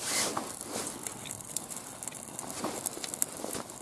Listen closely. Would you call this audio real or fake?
real